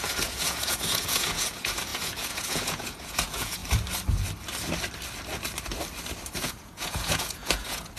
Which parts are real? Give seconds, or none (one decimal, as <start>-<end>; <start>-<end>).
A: 3.6-6.3